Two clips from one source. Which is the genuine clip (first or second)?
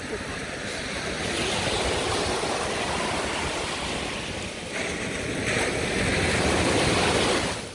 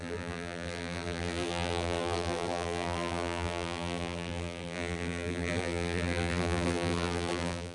first